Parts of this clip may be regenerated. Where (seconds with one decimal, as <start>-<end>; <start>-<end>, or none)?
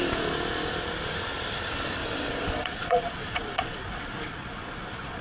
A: 2.0-5.2